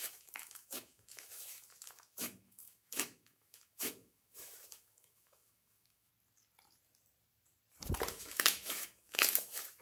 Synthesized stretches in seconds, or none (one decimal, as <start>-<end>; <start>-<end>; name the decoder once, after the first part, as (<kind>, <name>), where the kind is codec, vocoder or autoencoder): 0.0-6.1 (autoencoder, DAC-VAE); 8.1-9.8